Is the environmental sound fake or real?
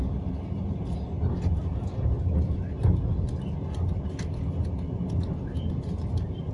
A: real